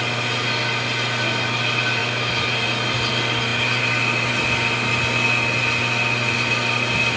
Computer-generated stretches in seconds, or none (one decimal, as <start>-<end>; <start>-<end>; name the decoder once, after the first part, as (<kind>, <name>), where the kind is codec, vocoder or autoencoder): none